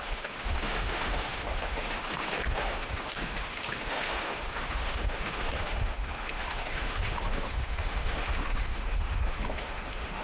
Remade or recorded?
remade